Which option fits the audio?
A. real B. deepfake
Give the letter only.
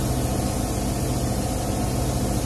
A